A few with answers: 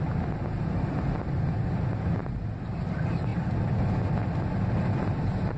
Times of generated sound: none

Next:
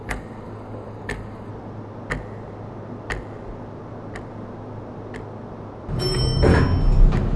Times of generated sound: 0.0-1.5 (codec, DAC); 5.9-6.5

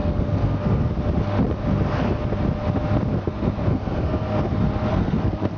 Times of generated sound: 0.0-0.9 (codec, SNAC); 3.1-4.5; 4.9-5.6